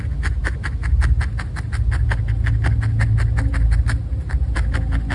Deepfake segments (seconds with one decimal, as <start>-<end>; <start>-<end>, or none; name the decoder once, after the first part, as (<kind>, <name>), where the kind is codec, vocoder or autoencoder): none

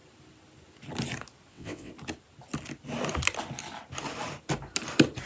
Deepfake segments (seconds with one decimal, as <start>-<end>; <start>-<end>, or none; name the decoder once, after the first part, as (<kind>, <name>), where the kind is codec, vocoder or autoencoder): 1.5-1.9 (vocoder, WaveNeXt)

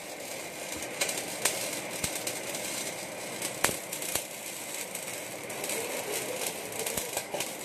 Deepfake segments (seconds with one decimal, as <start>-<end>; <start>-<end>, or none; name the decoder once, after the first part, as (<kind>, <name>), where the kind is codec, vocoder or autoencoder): 5.1-7.6 (vocoder, BigVGAN v2)